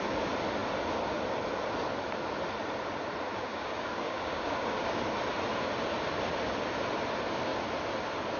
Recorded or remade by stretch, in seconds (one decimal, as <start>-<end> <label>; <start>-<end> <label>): 0.0-3.3 recorded; 3.3-5.0 remade; 5.0-8.4 recorded